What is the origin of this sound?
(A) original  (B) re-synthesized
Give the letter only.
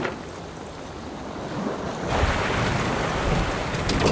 A